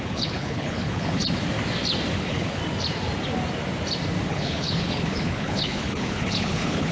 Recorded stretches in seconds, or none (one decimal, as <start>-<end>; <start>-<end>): 1.2-2.2; 2.6-4.3